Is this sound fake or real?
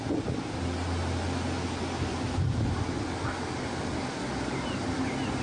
real